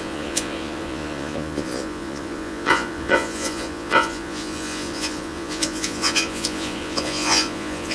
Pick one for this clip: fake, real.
fake